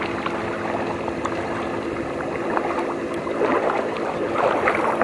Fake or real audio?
real